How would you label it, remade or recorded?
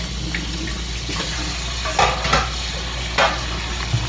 recorded